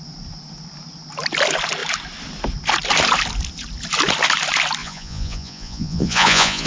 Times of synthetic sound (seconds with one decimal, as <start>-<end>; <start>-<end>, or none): 4.8-6.7